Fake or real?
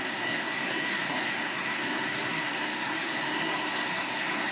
fake